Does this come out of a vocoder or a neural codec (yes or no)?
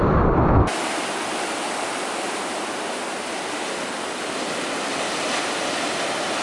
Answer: no